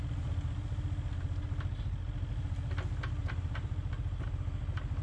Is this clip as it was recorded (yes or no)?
yes